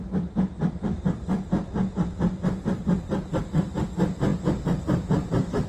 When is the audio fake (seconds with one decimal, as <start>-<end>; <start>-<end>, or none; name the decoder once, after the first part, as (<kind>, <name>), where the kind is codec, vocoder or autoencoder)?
none